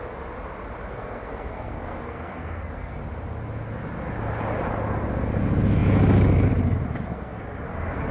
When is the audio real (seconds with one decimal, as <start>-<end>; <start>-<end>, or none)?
0.0-0.8; 3.0-7.1